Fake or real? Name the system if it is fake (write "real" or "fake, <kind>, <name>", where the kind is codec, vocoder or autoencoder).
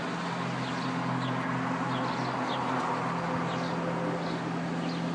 real